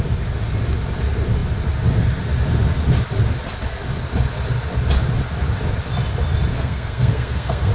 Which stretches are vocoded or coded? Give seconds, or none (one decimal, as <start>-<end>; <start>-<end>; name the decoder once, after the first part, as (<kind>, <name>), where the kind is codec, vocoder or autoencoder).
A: 6.5-7.7 (codec, SNAC)